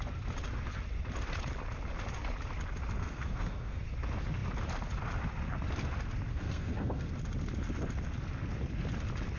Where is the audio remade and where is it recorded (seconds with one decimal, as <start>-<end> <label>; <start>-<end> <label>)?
0.0-3.0 recorded; 3.0-3.8 remade; 3.8-6.3 recorded; 6.3-7.1 remade; 7.1-9.4 recorded